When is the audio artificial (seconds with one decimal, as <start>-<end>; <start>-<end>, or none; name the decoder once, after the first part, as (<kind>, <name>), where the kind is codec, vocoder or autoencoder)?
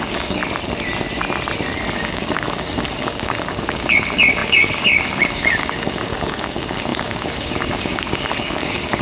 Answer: 0.0-0.4 (codec, DAC); 1.9-9.0